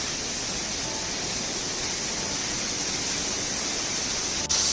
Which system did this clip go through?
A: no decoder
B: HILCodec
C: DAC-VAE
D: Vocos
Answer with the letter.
A